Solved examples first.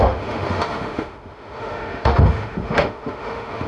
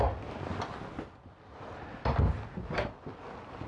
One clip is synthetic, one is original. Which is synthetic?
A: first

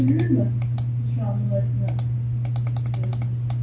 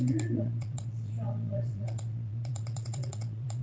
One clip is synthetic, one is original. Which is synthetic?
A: second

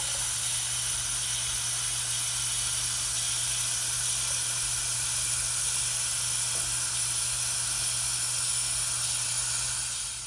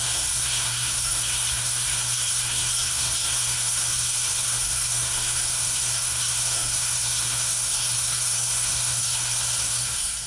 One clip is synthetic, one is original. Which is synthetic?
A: second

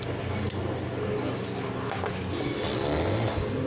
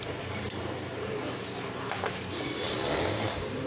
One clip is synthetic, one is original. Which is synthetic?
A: second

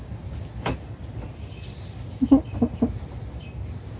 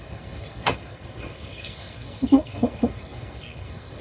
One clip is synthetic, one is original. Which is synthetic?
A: second